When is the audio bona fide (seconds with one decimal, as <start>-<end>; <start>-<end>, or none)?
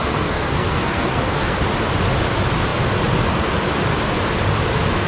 1.6-5.1